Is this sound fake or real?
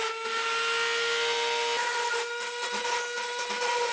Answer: real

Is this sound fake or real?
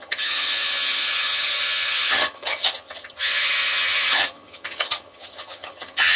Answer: fake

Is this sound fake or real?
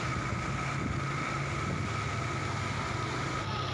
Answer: real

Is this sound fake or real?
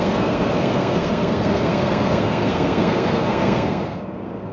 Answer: fake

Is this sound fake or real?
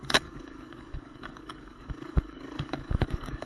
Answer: fake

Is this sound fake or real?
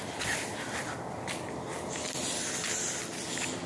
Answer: real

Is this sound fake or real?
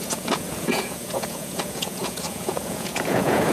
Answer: fake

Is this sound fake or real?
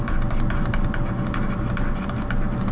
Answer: real